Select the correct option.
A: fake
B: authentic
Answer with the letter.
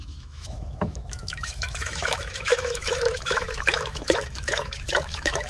A